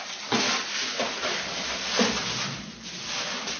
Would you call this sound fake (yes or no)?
no